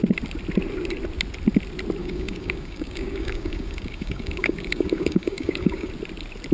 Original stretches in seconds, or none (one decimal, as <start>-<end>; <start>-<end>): 0.0-2.0; 5.9-6.5